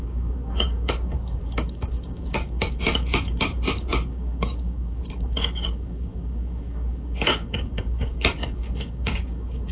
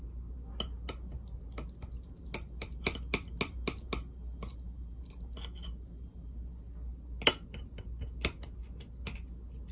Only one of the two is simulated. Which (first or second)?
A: first